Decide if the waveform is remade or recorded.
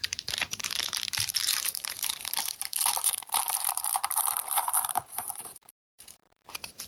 remade